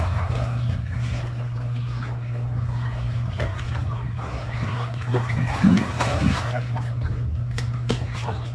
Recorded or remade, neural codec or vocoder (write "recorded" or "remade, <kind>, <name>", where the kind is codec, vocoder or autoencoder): remade, codec, SNAC